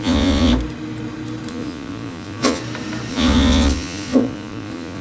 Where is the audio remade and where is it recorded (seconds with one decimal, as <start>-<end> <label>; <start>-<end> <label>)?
0.0-0.5 remade; 0.5-1.5 recorded; 1.5-2.6 remade; 2.6-3.1 recorded; 3.1-5.0 remade